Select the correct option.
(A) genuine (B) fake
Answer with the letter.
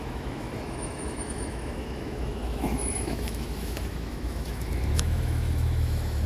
B